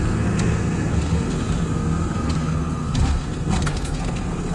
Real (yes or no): no